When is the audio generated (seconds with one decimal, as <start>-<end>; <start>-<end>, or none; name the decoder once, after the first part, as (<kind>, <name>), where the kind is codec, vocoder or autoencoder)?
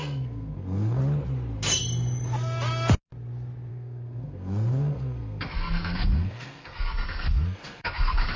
0.0-1.0 (codec, SNAC); 3.7-8.4